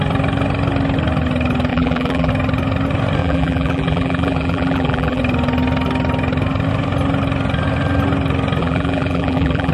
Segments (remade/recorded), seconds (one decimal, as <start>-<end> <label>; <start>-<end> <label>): 0.0-1.7 recorded; 1.7-2.3 remade; 2.3-3.2 recorded; 3.2-5.2 remade; 5.2-8.6 recorded; 8.6-9.7 remade